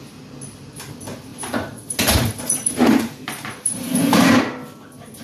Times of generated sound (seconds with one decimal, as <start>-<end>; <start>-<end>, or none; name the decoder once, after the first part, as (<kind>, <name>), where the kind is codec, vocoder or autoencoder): 1.3-4.4 (vocoder, BigVGAN v2)